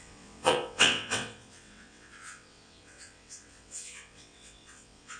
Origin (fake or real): fake